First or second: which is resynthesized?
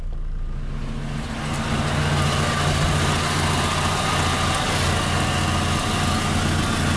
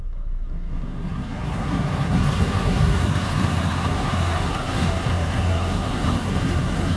second